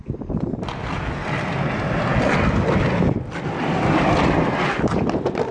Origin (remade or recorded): recorded